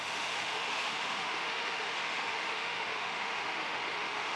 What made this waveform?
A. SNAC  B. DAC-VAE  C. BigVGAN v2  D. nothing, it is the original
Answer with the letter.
B